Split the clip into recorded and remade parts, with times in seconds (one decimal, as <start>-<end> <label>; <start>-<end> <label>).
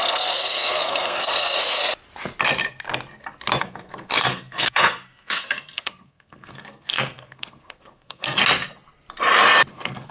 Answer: 0.0-1.8 remade; 1.8-3.6 recorded; 3.6-8.4 remade; 8.4-9.7 recorded; 9.7-10.1 remade